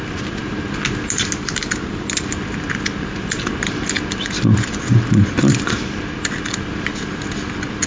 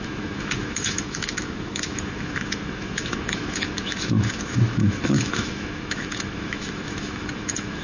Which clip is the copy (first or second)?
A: second